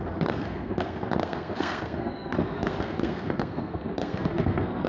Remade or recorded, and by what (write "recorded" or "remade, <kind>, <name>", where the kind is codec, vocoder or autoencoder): remade, codec, SNAC